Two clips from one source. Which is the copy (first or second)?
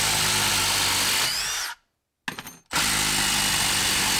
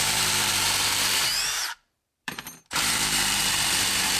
second